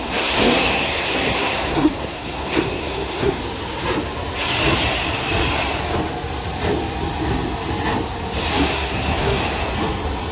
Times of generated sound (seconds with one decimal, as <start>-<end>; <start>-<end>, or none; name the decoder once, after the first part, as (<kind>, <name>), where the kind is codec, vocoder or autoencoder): 0.0-3.4 (codec, SNAC); 8.5-9.4